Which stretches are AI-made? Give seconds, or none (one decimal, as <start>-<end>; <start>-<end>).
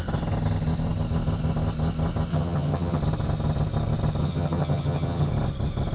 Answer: 2.3-3.0; 4.2-5.3